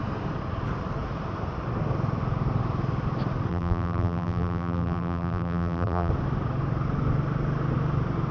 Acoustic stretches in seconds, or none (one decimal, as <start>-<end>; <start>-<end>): 0.0-3.5; 6.1-8.3

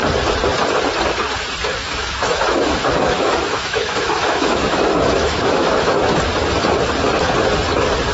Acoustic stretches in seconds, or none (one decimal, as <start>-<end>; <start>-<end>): 0.0-1.8; 6.2-8.1

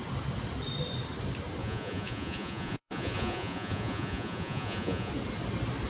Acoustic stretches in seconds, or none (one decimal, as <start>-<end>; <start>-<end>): 0.0-1.6; 5.1-5.9